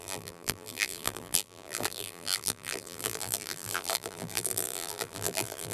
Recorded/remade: remade